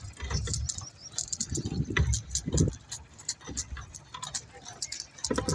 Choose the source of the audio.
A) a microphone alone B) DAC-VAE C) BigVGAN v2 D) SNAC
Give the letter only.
A